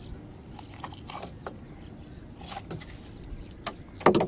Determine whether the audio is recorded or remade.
recorded